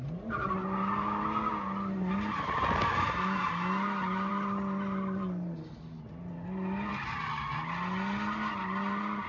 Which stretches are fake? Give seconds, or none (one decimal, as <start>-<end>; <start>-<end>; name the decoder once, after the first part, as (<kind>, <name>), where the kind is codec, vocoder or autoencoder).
none